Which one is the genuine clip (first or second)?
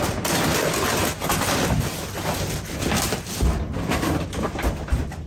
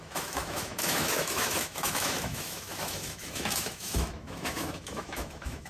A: first